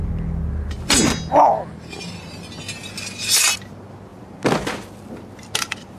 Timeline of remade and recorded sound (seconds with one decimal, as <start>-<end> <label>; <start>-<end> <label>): 0.0-6.0 recorded